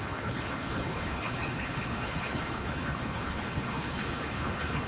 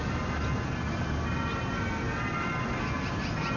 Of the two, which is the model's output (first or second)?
first